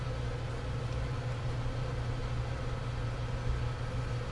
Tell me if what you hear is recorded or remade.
recorded